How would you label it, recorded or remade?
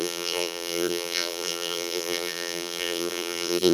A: remade